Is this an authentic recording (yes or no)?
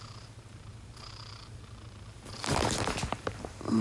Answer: no